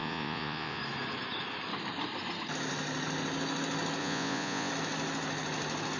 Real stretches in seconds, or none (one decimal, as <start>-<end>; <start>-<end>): 0.8-4.0; 4.7-6.0